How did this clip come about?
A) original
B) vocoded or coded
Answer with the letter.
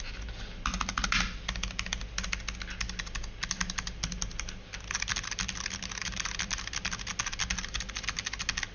A